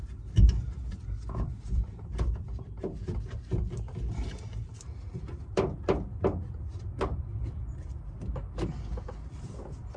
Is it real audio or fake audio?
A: fake